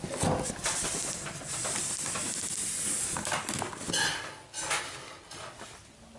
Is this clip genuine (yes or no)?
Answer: yes